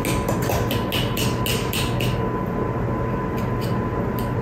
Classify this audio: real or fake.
real